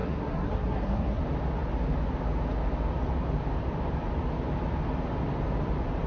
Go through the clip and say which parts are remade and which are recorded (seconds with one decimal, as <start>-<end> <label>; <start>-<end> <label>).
0.0-1.2 remade; 1.2-6.1 recorded